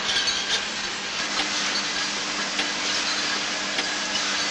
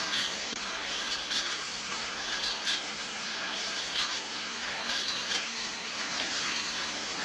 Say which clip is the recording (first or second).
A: first